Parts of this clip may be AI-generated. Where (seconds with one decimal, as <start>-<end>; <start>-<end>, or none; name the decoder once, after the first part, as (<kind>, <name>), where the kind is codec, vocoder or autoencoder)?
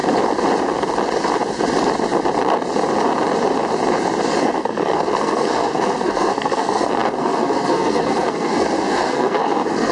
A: 4.4-9.9 (codec, SNAC)